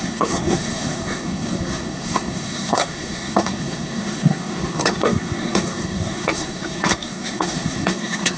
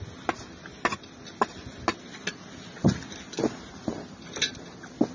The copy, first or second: first